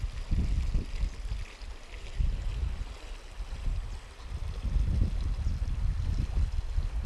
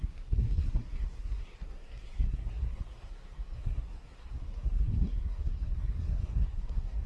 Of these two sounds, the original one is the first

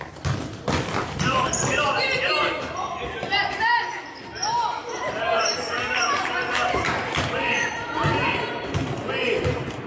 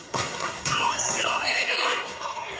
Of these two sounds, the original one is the first